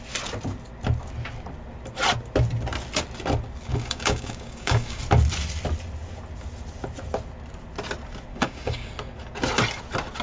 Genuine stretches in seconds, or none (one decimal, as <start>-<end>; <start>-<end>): 0.0-3.7; 5.0-8.3; 8.9-10.2